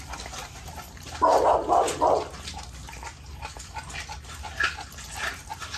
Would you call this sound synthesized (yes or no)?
no